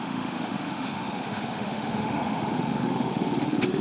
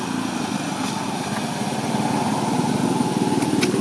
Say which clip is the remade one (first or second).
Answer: first